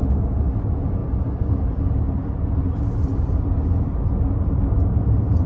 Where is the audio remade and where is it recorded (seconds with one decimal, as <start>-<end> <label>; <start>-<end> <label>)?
0.0-4.9 recorded; 4.9-5.5 remade